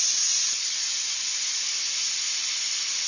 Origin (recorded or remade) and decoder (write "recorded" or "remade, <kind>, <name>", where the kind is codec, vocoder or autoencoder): recorded